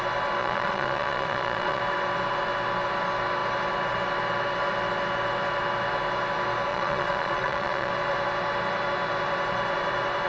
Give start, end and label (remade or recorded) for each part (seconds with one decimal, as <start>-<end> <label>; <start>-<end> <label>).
0.0-0.4 recorded; 0.4-1.8 remade; 1.8-6.7 recorded; 6.7-7.9 remade; 7.9-10.3 recorded